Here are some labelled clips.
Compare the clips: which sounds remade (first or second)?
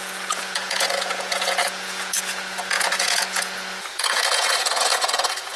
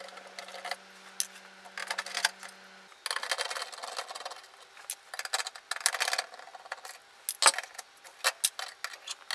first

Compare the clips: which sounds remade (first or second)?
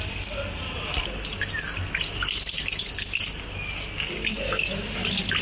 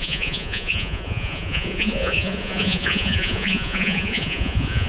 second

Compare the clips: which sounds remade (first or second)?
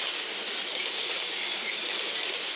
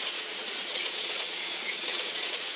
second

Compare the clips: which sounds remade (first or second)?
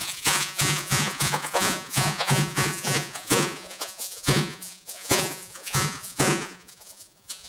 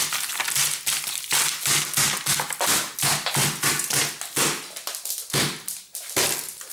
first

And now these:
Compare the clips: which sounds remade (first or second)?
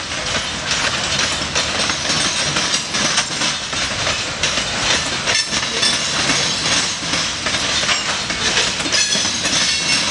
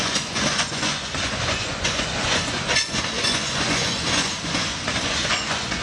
second